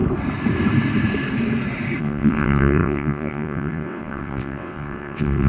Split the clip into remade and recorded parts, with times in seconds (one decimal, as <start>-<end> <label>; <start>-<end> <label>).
0.0-2.0 recorded; 2.0-5.5 remade